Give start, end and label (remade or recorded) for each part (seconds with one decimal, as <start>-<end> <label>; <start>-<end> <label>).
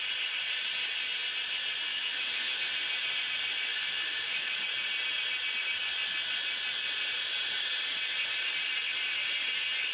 0.0-1.9 recorded; 1.9-2.6 remade; 2.6-3.7 recorded; 3.7-4.6 remade; 4.6-9.9 recorded